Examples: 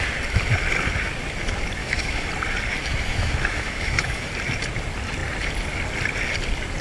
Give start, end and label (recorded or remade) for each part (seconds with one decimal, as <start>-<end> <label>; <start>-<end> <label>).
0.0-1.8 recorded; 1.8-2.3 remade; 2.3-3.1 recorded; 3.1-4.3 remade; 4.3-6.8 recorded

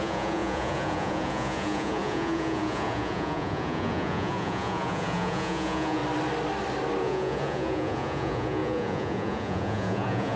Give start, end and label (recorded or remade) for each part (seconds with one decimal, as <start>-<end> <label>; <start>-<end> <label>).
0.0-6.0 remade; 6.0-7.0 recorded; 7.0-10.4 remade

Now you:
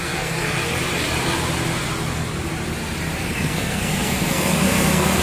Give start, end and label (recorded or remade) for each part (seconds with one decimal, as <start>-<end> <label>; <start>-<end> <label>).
0.0-0.6 remade; 0.6-3.2 recorded; 3.2-5.2 remade